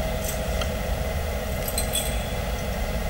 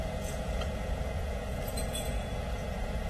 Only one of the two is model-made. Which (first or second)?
second